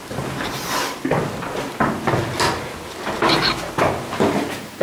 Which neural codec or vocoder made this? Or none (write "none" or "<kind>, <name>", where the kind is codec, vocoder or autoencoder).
none